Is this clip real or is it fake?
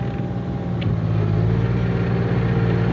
real